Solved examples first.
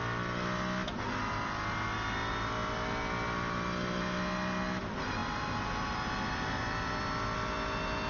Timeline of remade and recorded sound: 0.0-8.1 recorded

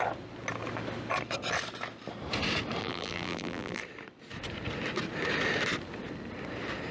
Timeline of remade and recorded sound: 0.0-2.8 recorded; 2.8-3.8 remade; 3.8-6.9 recorded

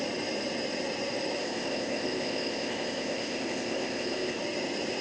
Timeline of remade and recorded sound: 0.0-1.4 recorded; 1.4-4.4 remade; 4.4-5.0 recorded

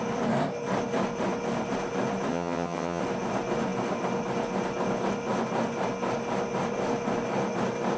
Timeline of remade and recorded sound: 0.0-2.3 recorded; 2.3-3.0 remade; 3.0-8.0 recorded